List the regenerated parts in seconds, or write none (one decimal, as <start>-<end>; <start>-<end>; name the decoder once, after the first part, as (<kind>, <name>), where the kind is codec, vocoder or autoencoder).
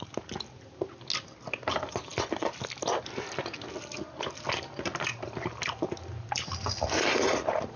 none